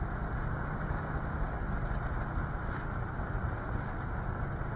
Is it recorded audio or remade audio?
recorded